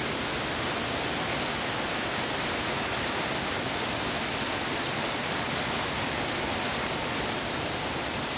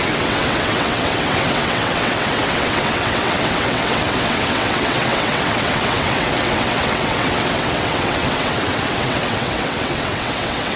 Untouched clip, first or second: first